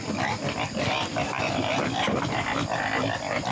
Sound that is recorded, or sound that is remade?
remade